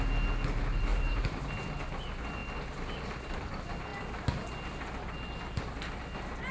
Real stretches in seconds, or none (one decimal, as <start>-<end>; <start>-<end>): 0.0-0.9; 1.5-6.5